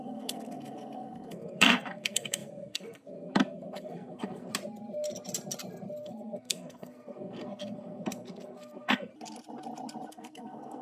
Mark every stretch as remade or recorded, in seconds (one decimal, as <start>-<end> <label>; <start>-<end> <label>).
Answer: 0.0-4.5 remade; 4.5-6.0 recorded; 6.0-9.1 remade; 9.1-10.1 recorded; 10.1-10.8 remade